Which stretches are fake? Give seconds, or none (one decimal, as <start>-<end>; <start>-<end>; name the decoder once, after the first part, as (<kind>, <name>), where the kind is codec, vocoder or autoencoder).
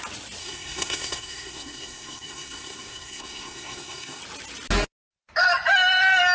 0.4-4.2 (codec, SNAC)